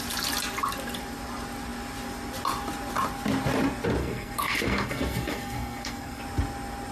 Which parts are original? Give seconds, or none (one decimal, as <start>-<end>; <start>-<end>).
0.0-4.0; 6.2-6.9